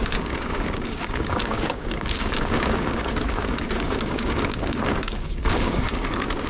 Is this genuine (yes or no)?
no